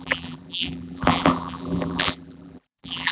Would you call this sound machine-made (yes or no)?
yes